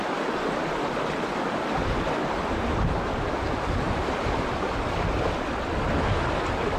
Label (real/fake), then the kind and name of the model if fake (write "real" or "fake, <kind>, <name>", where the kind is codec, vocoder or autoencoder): real